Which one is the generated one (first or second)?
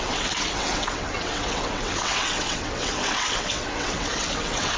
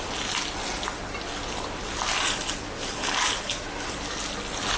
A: first